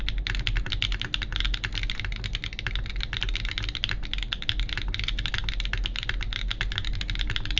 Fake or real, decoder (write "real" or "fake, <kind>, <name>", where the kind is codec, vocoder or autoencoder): real